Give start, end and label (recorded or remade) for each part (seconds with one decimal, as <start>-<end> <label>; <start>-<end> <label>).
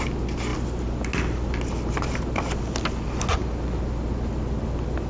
0.0-5.1 recorded